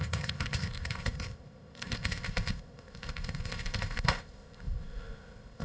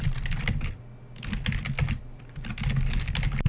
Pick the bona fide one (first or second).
second